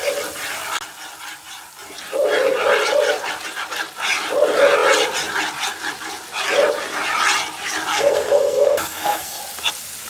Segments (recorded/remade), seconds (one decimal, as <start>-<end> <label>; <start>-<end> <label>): 0.0-7.9 recorded; 7.9-9.4 remade; 9.4-10.1 recorded